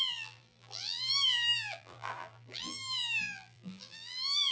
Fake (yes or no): yes